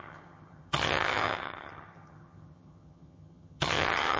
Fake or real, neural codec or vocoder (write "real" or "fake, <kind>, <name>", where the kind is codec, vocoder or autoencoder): fake, vocoder, HiFi-GAN